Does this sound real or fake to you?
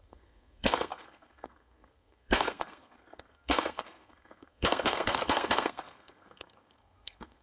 fake